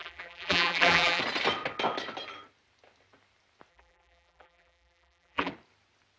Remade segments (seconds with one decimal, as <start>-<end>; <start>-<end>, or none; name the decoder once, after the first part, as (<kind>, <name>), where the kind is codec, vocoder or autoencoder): 0.0-1.2 (vocoder, BigVGAN v2); 3.7-5.5